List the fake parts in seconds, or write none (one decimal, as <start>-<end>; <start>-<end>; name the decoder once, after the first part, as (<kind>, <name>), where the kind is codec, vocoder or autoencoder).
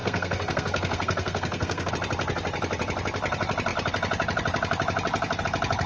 0.0-1.9 (codec, SNAC)